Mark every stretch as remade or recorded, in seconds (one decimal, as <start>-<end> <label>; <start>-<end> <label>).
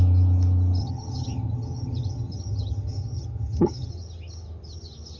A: 0.0-0.8 recorded; 0.8-3.9 remade; 3.9-5.2 recorded